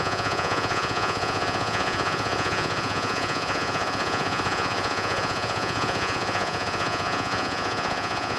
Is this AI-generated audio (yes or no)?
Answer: yes